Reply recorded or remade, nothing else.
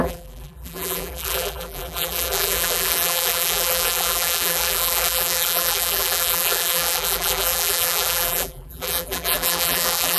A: remade